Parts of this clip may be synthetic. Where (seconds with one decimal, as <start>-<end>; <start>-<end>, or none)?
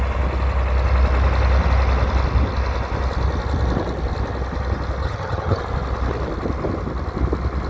5.0-5.6